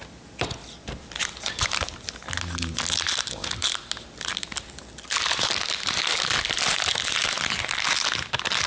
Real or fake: real